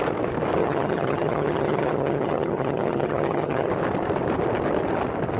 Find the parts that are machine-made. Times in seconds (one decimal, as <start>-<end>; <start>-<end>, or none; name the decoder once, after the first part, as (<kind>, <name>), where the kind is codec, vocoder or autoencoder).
0.6-3.7 (vocoder, HiFi-GAN)